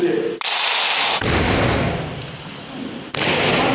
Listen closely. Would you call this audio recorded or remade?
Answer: recorded